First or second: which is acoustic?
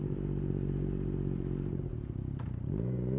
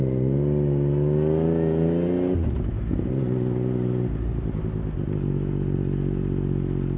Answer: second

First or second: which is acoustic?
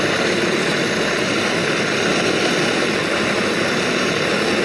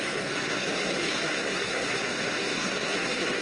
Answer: first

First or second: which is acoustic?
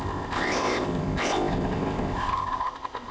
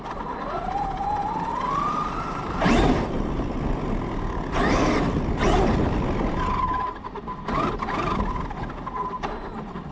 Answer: second